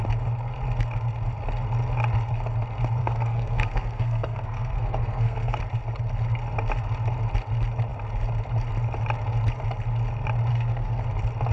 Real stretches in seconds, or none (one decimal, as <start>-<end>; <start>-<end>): 0.0-3.0; 5.6-10.5; 11.0-11.5